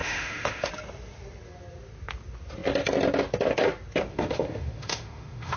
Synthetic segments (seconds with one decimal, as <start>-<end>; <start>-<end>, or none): 0.0-0.7; 4.1-5.6